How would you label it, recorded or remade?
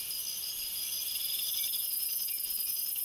recorded